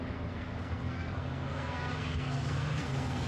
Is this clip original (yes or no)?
no